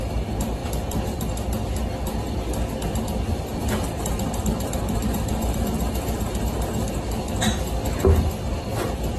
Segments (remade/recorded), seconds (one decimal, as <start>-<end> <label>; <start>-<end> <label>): 0.0-7.8 recorded; 7.8-8.3 remade; 8.3-9.2 recorded